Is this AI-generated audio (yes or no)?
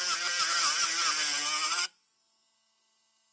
no